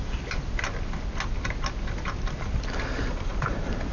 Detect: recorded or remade recorded